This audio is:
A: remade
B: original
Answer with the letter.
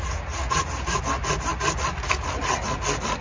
B